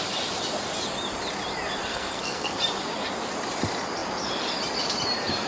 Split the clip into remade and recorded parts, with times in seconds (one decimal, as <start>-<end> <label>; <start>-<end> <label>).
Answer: 0.0-1.9 recorded; 1.9-2.6 remade; 2.6-5.5 recorded